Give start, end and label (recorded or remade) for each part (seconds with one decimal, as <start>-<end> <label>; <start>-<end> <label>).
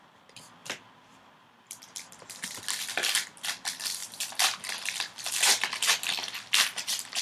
0.0-0.6 recorded; 0.6-2.6 remade; 2.6-4.0 recorded; 4.0-4.7 remade; 4.7-7.2 recorded